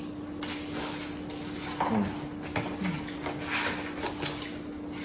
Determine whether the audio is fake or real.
real